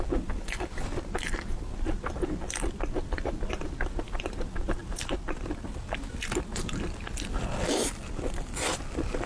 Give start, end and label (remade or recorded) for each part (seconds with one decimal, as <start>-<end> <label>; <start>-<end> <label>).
0.0-9.3 recorded